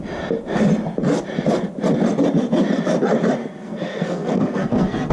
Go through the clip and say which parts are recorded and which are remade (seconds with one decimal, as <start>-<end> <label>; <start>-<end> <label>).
0.0-3.4 recorded; 3.4-5.1 remade